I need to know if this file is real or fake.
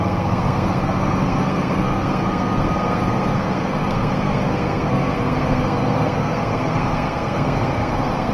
fake